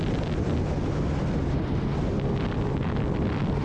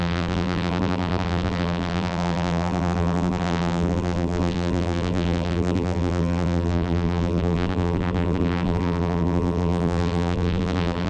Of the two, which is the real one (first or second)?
first